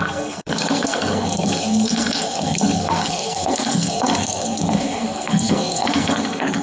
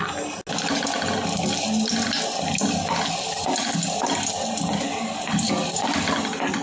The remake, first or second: first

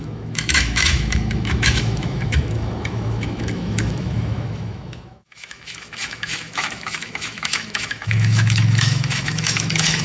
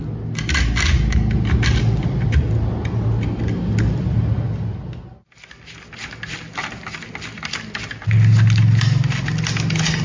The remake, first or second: first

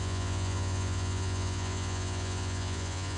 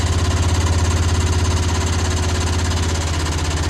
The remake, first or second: first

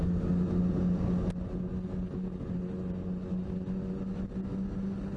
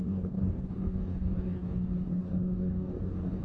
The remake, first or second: second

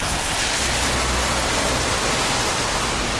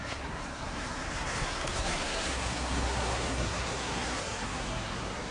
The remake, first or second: second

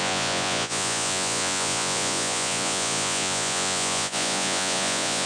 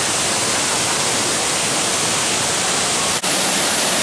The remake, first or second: first